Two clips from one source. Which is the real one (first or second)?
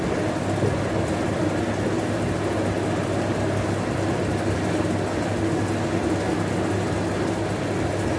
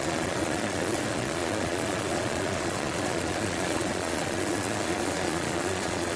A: first